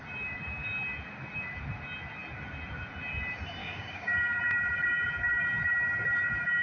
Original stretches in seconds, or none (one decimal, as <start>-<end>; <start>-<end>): 0.0-3.6; 4.4-6.6